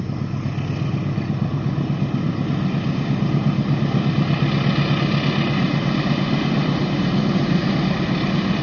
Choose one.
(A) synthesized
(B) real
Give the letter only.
B